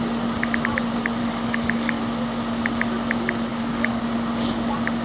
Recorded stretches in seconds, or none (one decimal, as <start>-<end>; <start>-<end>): 0.0-1.2; 2.0-3.5; 4.0-5.0